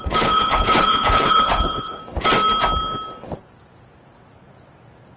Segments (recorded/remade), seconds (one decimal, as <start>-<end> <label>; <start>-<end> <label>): 0.0-2.0 remade; 2.0-5.2 recorded